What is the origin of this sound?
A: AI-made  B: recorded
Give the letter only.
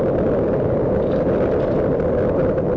B